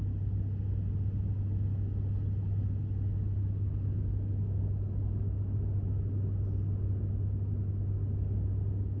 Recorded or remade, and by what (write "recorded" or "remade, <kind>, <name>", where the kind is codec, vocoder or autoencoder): recorded